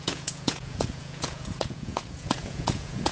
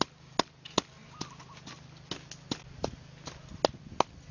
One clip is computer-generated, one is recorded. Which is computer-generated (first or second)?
first